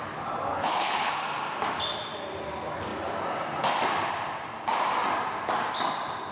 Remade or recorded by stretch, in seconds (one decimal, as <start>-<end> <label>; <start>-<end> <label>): 0.0-0.5 recorded; 0.5-1.1 remade; 1.1-6.3 recorded